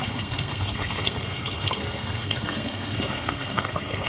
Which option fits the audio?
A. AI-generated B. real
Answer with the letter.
A